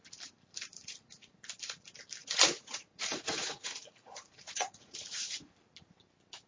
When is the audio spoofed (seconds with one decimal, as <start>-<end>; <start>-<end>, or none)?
0.7-1.4; 2.2-5.3